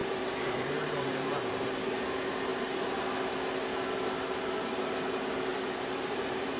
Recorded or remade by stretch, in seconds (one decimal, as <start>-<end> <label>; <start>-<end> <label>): 0.0-1.7 remade; 1.7-5.5 recorded; 5.5-6.6 remade